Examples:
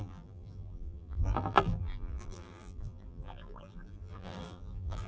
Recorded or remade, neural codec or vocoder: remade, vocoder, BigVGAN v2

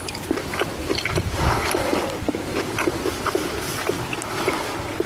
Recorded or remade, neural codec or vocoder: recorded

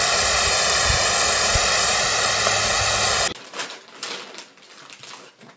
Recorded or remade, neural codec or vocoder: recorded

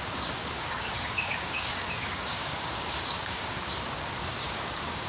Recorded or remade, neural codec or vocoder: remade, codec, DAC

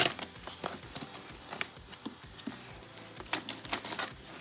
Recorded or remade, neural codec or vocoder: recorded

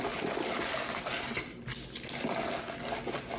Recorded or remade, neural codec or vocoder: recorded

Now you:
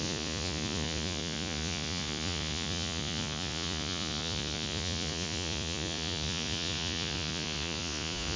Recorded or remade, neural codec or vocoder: remade, vocoder, Vocos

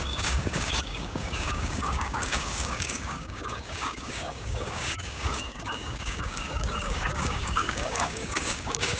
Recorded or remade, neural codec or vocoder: remade, codec, DAC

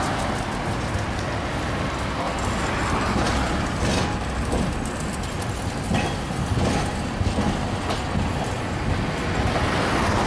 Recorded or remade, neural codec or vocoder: recorded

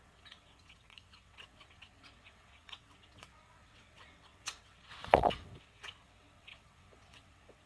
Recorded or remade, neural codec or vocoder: remade, vocoder, WaveNeXt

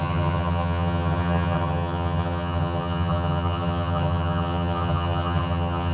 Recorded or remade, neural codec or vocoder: remade, vocoder, HiFi-GAN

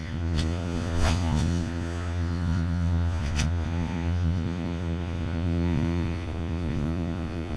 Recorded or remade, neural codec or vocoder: remade, vocoder, Vocos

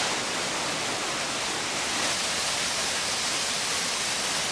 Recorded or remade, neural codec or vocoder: recorded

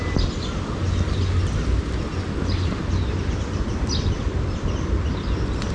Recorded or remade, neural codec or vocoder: recorded